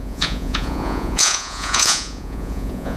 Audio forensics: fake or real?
fake